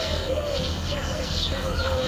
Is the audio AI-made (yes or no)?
yes